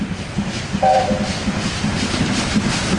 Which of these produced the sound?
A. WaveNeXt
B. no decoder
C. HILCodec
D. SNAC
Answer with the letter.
B